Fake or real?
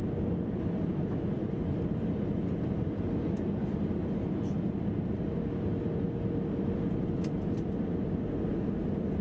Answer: real